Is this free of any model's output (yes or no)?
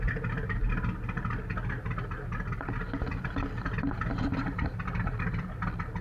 yes